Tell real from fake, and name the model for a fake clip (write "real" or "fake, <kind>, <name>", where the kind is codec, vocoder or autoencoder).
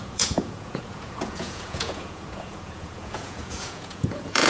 fake, vocoder, Vocos